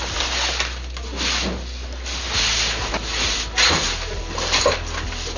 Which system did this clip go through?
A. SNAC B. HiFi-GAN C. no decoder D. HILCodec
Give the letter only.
C